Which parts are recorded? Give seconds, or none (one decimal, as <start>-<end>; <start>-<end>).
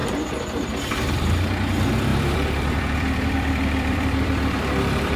1.2-2.1